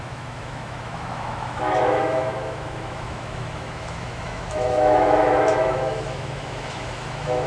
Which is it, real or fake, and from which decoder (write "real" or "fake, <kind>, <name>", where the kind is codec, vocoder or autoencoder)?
fake, autoencoder, DAC-VAE